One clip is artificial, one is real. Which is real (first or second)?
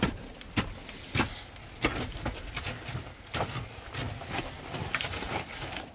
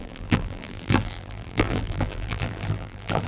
first